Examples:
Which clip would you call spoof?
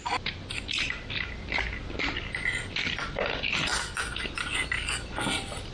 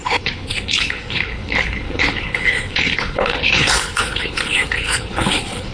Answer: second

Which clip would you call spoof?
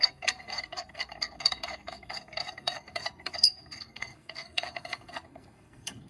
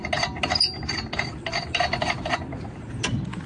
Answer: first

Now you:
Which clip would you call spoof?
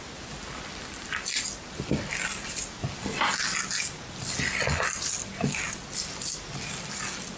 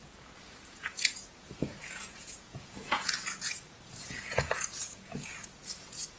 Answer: second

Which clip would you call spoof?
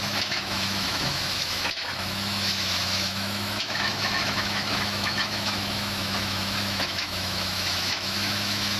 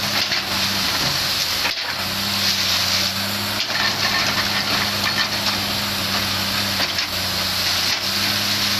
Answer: first